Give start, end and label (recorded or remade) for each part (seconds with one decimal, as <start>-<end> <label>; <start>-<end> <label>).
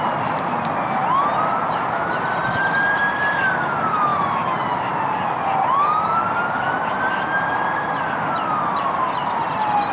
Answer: 0.0-9.9 recorded